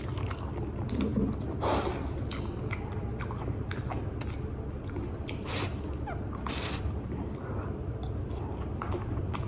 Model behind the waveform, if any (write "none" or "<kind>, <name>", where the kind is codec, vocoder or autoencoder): none